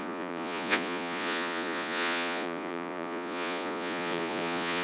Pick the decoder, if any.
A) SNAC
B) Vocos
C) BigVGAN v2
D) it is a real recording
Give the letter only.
B